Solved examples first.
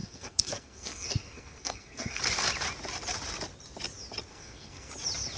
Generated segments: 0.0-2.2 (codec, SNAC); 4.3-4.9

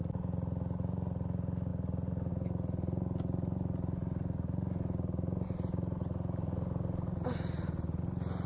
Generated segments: none

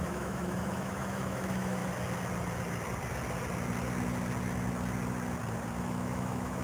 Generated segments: 0.0-1.8 (autoencoder, DAC-VAE); 5.8-6.6

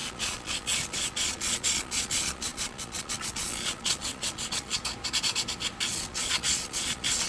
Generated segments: 0.0-4.8 (vocoder, Vocos); 5.9-7.3

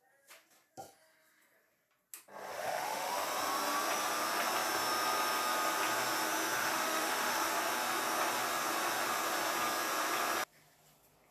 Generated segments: 2.5-3.1 (autoencoder, DAC-VAE); 6.6-7.5

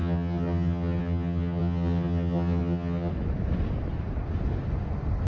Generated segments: 0.0-3.1 (vocoder, HiFi-GAN)

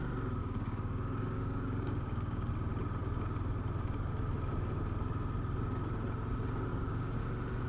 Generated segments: 0.4-2.5 (codec, DAC); 6.7-7.2